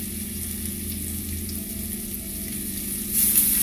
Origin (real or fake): real